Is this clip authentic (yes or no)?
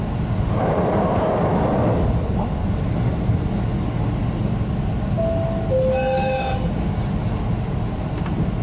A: yes